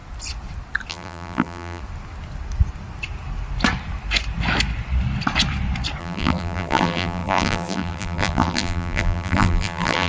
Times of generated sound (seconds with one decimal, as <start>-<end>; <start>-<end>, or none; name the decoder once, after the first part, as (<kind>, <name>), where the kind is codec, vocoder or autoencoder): 0.9-1.8 (vocoder, BigVGAN v2); 6.0-10.1